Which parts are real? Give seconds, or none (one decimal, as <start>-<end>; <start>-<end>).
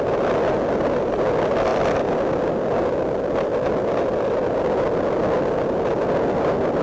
0.0-6.8